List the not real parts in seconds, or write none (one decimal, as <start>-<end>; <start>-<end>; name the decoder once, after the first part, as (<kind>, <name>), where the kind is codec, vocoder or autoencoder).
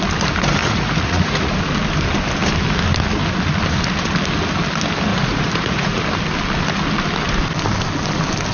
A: 0.6-1.6 (vocoder, Vocos); 5.1-6.0